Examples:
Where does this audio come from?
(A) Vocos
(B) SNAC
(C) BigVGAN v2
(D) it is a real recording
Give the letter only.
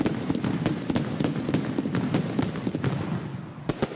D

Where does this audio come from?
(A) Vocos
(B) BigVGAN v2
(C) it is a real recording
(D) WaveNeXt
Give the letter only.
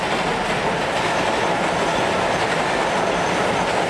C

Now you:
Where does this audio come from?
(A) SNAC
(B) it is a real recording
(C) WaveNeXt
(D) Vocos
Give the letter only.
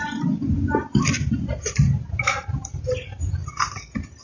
B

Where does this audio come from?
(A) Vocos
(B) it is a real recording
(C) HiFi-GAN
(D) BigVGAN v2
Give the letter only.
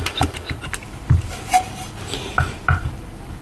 D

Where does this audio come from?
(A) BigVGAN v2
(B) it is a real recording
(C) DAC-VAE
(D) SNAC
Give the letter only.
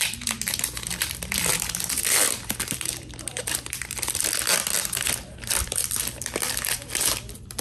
A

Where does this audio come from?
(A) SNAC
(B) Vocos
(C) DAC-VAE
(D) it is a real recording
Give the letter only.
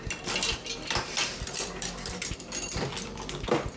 D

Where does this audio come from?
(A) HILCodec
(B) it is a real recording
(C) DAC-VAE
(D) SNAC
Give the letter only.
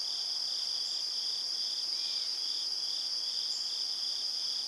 B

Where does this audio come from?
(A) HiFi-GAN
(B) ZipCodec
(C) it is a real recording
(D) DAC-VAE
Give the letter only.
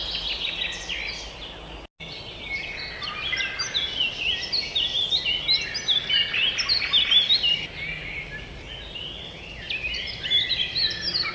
C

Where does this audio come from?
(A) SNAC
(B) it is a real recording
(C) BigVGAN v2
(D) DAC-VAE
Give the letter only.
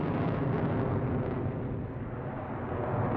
B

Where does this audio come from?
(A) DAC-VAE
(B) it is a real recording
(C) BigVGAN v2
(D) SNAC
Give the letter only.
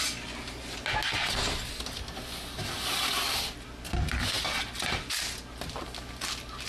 B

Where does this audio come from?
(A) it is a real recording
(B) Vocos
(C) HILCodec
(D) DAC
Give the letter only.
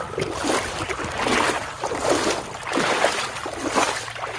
A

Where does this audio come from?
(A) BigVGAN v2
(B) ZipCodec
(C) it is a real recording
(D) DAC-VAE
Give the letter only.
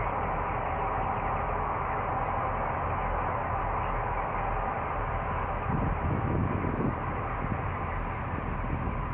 C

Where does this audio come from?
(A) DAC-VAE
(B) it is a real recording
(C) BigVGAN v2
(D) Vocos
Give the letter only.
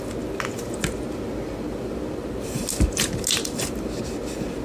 B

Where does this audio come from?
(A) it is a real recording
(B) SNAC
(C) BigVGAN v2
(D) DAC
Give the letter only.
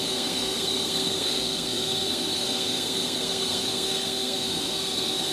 B